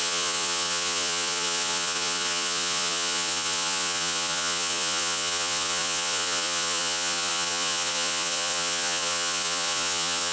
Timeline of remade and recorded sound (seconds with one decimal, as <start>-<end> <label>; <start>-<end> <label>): 0.0-10.3 remade